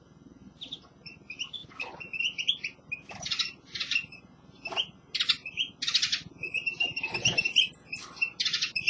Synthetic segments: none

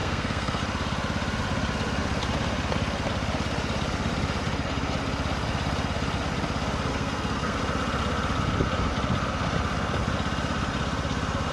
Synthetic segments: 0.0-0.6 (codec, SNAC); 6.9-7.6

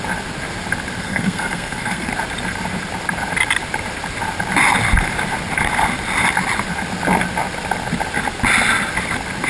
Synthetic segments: 1.0-2.1 (codec, SNAC)